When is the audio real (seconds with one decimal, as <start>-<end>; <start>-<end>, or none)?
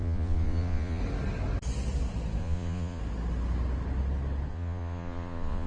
1.0-2.4; 3.0-4.5